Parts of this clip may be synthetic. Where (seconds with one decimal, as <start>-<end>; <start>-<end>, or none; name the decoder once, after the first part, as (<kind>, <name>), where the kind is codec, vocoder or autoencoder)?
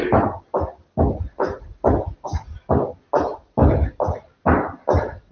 none